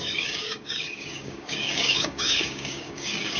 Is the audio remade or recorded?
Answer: remade